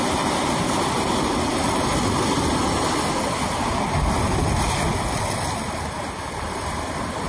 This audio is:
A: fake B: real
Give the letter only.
B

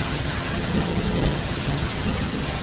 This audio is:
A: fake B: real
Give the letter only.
A